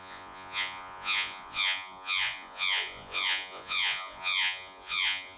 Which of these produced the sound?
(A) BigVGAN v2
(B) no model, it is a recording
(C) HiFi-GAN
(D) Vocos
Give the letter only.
D